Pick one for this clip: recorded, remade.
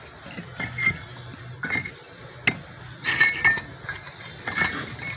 recorded